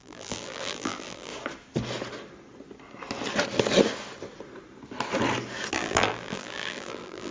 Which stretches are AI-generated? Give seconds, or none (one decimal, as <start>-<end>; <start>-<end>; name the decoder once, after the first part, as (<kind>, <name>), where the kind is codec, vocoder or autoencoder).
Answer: 0.0-1.3 (vocoder, BigVGAN v2); 5.7-7.3